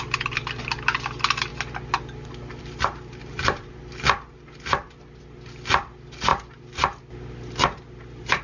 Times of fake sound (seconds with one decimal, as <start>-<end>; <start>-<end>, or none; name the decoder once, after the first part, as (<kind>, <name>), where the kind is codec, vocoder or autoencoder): none